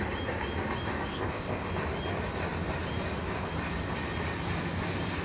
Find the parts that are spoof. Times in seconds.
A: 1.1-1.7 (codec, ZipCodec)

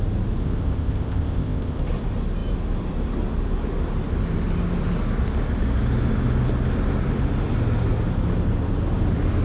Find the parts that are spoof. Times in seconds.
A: 0.4-1.8 (codec, ZipCodec)

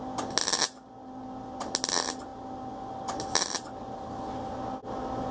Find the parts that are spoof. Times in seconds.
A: none